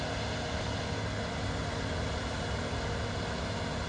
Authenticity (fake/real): real